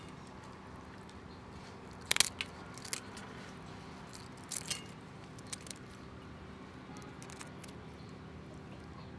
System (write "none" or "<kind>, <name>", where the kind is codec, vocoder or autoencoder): none